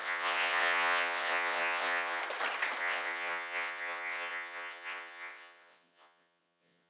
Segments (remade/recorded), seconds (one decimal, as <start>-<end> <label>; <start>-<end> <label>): 0.0-2.2 remade; 2.2-2.8 recorded; 2.8-6.9 remade